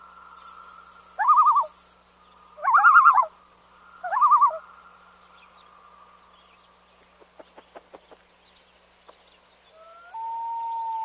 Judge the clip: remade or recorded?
recorded